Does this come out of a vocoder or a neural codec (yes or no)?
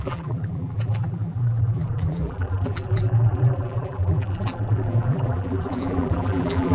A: yes